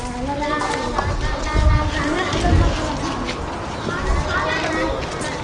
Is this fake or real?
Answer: real